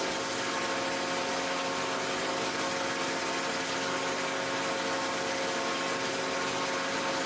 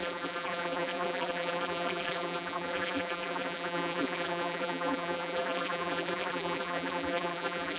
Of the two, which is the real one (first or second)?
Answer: first